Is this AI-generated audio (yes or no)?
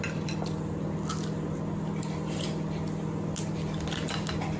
no